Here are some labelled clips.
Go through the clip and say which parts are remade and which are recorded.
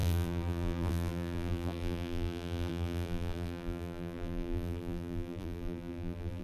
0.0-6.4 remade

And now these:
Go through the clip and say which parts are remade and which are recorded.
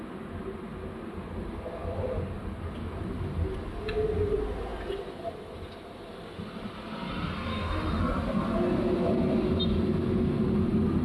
0.0-7.5 recorded; 7.5-8.0 remade; 8.0-11.0 recorded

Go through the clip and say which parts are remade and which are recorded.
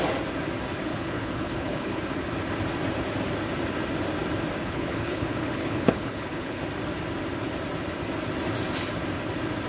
0.0-0.9 recorded; 0.9-2.0 remade; 2.0-4.6 recorded; 4.6-6.6 remade; 6.6-9.7 recorded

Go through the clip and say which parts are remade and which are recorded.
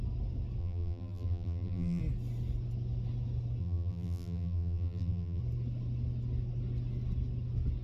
0.0-0.6 recorded; 0.6-2.0 remade; 2.0-3.6 recorded; 3.6-5.4 remade; 5.4-7.8 recorded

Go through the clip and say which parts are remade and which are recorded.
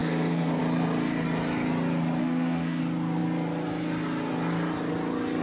0.0-0.6 remade; 0.6-2.2 recorded; 2.2-2.8 remade; 2.8-5.4 recorded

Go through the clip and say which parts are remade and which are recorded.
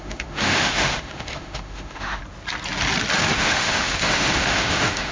0.0-2.2 remade; 2.2-3.3 recorded; 3.3-5.1 remade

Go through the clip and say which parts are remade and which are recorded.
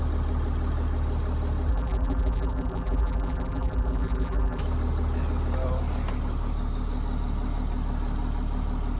0.0-1.7 recorded; 1.7-4.6 remade; 4.6-9.0 recorded